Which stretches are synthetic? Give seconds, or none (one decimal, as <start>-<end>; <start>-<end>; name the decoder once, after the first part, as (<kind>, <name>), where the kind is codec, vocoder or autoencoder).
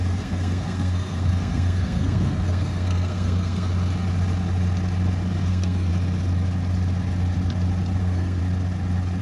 0.0-3.7 (codec, SNAC); 5.5-5.9; 8.0-8.4